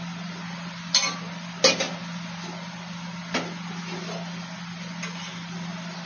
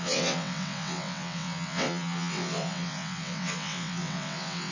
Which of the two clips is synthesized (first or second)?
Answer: second